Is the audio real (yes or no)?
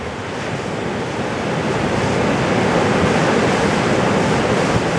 yes